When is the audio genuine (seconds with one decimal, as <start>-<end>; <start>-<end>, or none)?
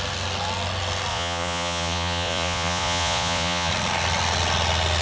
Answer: 0.0-1.1; 3.7-5.0